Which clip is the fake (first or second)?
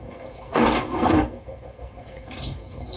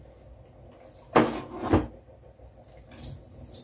first